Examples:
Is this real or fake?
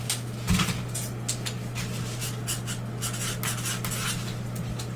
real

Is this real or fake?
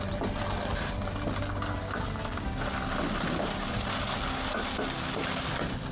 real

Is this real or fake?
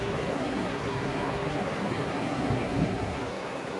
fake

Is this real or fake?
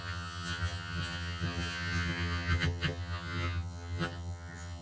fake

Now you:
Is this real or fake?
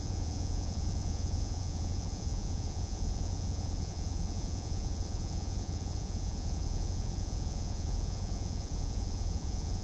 fake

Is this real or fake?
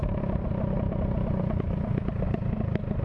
real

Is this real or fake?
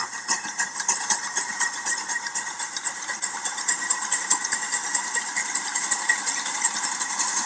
fake